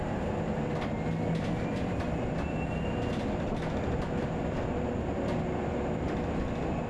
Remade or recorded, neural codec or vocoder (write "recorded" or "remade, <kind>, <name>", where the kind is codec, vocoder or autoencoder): recorded